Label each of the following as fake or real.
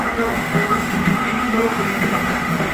fake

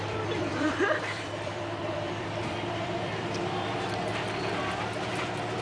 fake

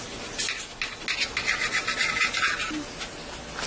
real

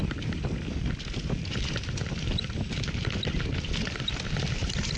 real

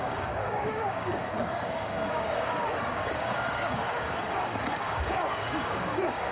fake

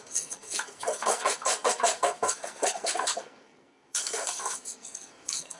fake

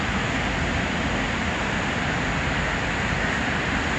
real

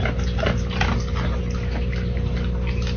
real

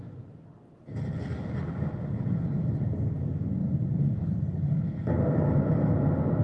real